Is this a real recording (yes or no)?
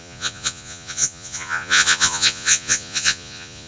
no